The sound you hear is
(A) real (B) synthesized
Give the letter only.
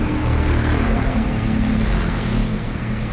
B